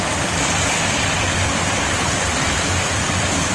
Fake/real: fake